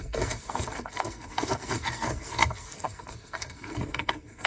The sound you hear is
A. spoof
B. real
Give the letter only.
A